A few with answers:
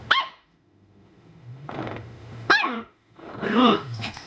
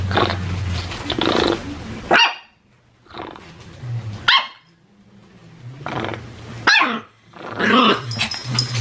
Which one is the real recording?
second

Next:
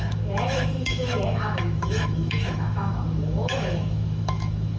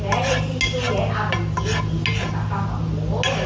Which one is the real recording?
second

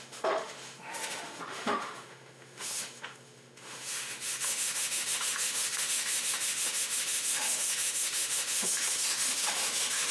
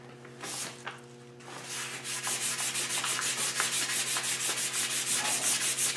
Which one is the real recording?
second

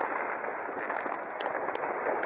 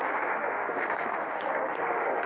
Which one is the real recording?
first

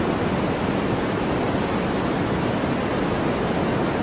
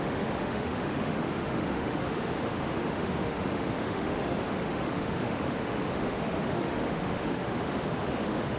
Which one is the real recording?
first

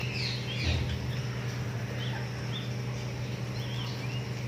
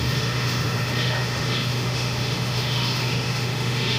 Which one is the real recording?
first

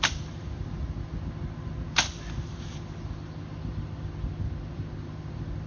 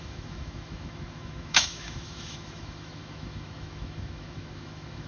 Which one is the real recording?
first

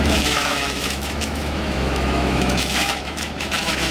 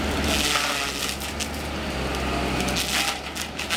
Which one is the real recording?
second